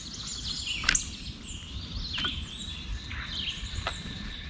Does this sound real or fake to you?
real